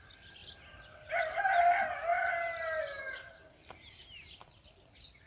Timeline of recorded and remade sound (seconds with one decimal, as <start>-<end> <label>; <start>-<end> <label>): 0.0-5.3 recorded